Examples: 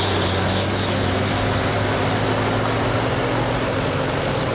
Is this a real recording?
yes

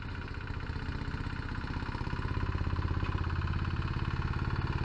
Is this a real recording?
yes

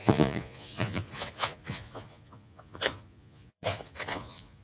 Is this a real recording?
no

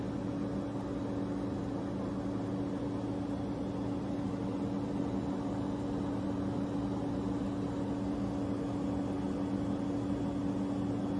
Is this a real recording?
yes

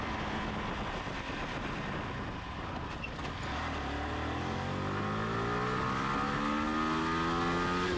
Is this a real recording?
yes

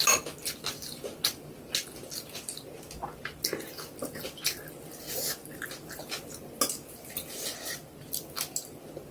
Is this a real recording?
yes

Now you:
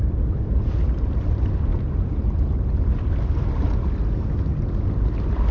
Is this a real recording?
yes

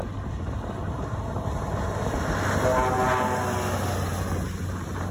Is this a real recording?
yes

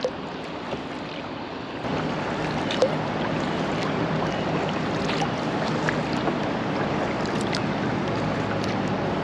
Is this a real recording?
yes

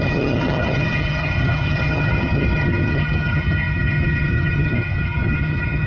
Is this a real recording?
no